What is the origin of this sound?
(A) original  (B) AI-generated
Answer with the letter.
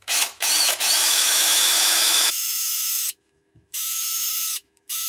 B